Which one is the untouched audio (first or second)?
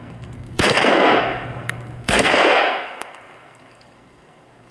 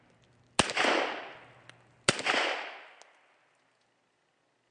second